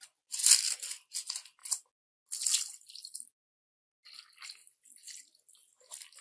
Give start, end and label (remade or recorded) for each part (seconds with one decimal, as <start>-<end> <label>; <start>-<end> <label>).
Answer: 0.0-6.2 recorded